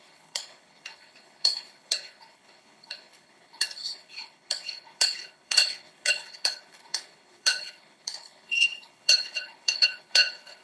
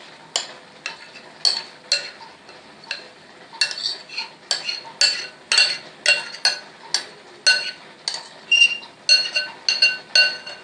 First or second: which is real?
second